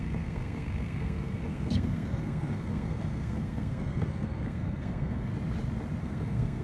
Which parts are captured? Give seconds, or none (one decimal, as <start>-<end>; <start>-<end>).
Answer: 5.3-6.0